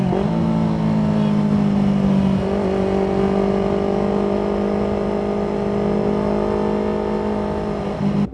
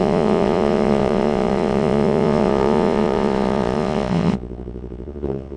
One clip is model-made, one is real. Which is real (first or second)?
first